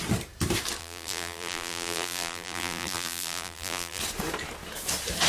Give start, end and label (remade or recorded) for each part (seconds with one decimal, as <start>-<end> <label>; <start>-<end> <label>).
0.0-0.8 recorded; 0.8-4.0 remade; 4.0-5.3 recorded